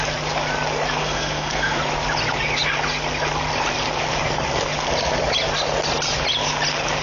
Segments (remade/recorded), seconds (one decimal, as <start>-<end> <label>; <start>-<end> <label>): 0.0-1.0 recorded; 1.0-1.8 remade; 1.8-7.0 recorded

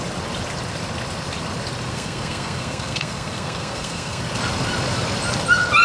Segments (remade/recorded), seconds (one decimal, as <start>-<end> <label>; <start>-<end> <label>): 0.0-1.9 recorded; 1.9-4.2 remade; 4.2-5.8 recorded

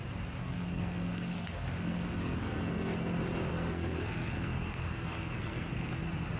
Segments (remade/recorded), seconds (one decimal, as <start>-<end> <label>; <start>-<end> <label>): 0.0-0.4 recorded; 0.4-3.1 remade; 3.1-3.5 recorded; 3.5-5.9 remade; 5.9-6.4 recorded

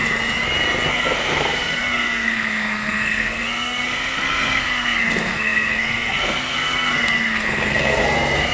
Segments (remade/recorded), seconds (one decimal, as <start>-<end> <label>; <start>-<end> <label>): 0.0-0.9 recorded; 0.9-8.5 remade

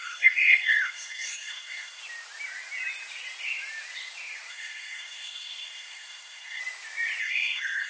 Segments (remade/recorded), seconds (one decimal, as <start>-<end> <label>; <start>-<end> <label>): 0.0-2.0 remade; 2.0-4.5 recorded; 4.5-6.6 remade; 6.6-7.2 recorded; 7.2-7.9 remade

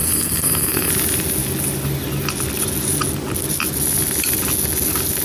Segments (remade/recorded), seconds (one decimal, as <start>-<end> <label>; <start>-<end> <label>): 0.0-0.9 remade; 0.9-5.2 recorded